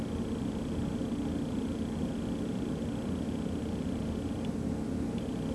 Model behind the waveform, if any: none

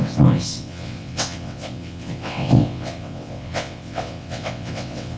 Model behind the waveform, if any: vocoder, WaveNeXt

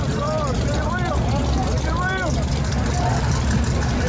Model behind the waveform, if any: none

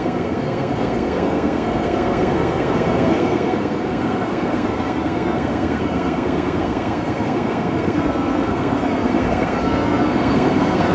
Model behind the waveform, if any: codec, SNAC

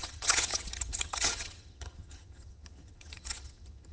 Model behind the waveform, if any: vocoder, HiFi-GAN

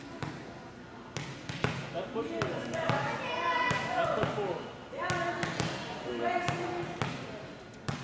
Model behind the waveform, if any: none